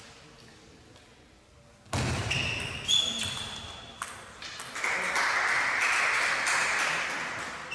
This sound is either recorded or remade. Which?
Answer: recorded